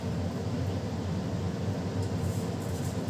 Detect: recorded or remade recorded